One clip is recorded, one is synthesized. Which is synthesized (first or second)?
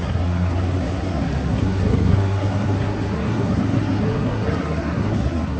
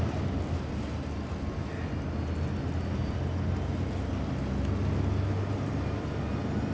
first